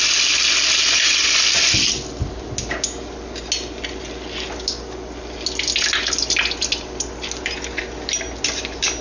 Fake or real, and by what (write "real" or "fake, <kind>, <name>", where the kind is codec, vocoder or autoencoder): real